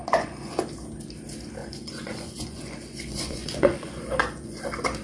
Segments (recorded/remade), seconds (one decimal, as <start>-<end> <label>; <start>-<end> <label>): 0.0-0.6 remade; 0.6-1.6 recorded; 1.6-4.6 remade; 4.6-5.0 recorded